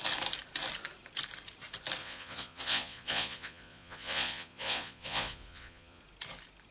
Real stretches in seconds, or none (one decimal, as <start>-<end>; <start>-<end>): 0.0-2.0; 6.0-6.7